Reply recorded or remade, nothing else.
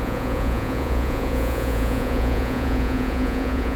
remade